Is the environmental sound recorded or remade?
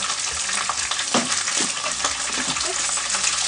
recorded